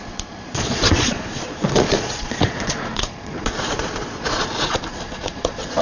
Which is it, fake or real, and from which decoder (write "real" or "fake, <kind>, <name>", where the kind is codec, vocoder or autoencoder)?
fake, vocoder, Vocos